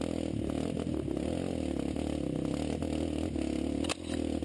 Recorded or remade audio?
recorded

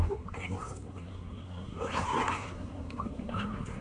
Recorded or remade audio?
remade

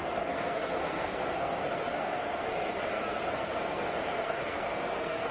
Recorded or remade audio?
remade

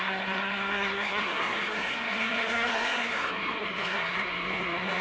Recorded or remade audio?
remade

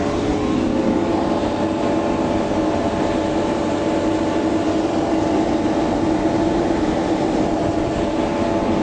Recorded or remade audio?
recorded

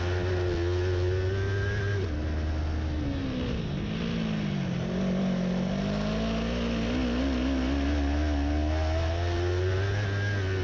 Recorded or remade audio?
recorded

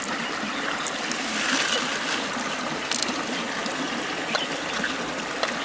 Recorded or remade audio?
recorded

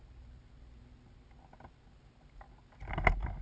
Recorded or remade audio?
recorded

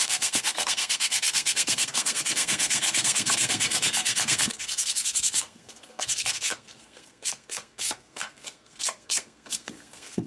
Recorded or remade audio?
remade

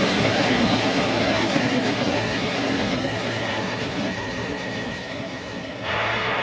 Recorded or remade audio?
remade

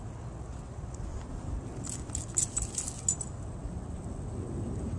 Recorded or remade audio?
recorded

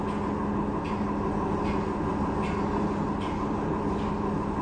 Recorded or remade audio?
recorded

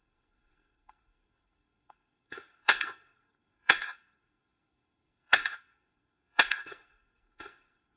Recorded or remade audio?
remade